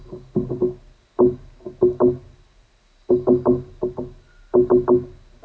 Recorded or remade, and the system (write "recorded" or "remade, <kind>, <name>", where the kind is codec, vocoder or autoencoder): recorded